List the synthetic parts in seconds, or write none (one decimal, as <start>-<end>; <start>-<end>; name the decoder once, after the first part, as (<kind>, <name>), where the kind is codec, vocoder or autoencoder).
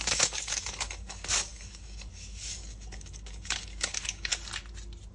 0.0-4.3 (codec, DAC)